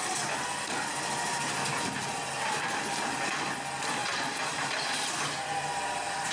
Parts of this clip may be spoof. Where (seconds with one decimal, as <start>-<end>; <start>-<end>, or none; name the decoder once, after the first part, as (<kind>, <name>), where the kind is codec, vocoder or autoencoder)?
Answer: 4.0-5.1 (vocoder, BigVGAN v2)